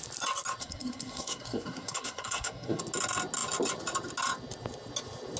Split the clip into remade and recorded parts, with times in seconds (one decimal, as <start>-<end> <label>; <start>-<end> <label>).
0.0-0.6 recorded; 0.6-2.8 remade; 2.8-5.4 recorded